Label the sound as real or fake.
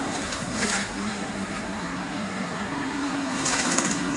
fake